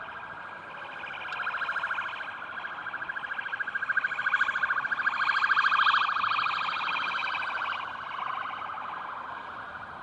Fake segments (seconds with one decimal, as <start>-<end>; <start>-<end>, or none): 0.0-10.0